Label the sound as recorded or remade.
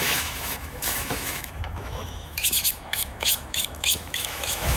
remade